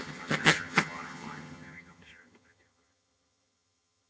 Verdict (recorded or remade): remade